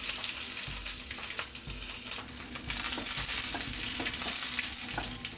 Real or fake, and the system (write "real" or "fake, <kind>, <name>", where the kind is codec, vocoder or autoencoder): real